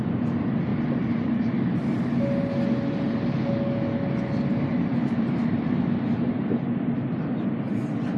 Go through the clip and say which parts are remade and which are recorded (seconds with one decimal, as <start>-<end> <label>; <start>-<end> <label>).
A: 0.0-0.7 recorded; 0.7-1.5 remade; 1.5-4.9 recorded; 4.9-6.5 remade; 6.5-8.2 recorded